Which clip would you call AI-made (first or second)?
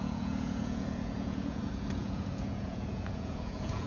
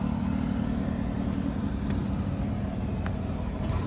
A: first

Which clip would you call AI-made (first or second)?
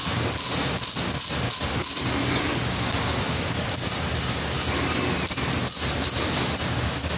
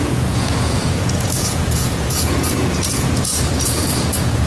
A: second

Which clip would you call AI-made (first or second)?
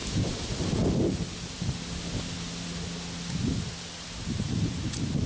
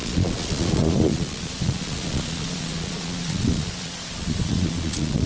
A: second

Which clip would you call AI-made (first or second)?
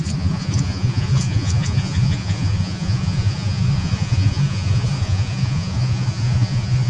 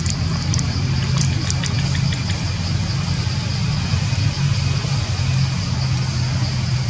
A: first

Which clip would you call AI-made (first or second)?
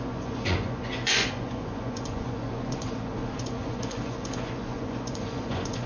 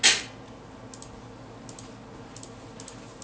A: first